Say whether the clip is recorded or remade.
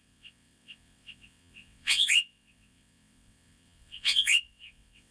remade